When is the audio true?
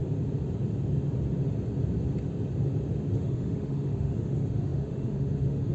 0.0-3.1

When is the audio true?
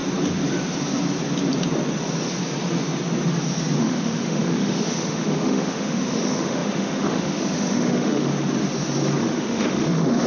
0.0-3.8; 8.3-9.2